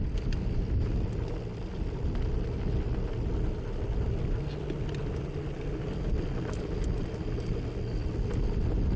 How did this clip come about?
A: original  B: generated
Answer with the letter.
A